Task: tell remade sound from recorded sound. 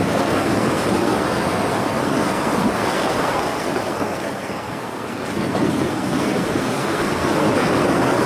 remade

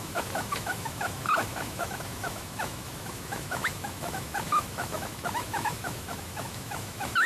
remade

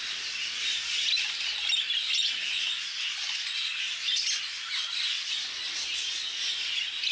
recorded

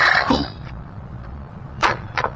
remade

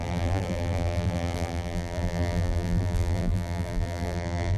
remade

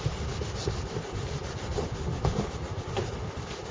recorded